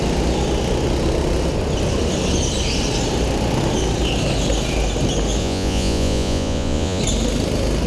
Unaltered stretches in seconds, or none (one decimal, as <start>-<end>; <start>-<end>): 0.0-5.4; 7.0-7.9